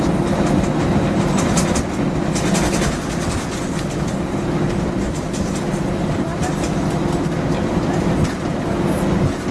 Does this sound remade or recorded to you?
recorded